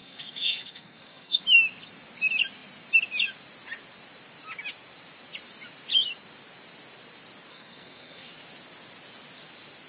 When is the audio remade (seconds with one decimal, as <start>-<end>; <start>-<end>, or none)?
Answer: 0.0-1.4; 7.5-8.3